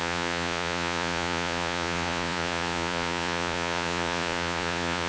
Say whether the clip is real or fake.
fake